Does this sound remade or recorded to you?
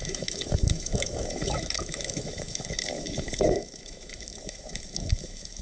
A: remade